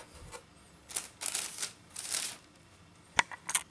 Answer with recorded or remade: recorded